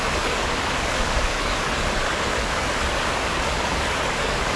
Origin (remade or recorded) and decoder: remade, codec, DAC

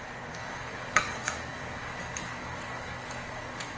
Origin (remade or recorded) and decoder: remade, codec, DAC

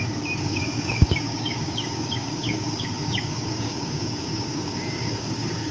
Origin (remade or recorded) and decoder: remade, codec, DAC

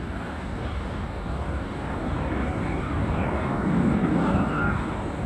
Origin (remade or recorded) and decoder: remade, codec, DAC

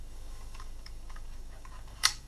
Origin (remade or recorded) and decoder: remade, codec, DAC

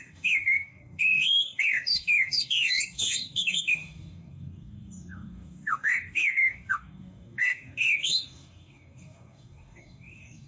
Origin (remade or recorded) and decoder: remade, codec, DAC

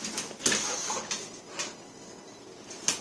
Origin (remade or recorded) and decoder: recorded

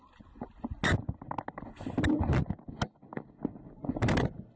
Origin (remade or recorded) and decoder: recorded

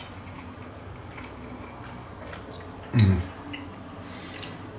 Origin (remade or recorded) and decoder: recorded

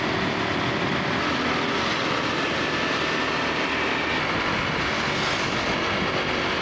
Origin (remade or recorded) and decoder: recorded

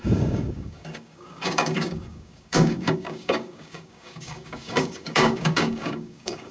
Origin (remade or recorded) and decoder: remade, codec, DAC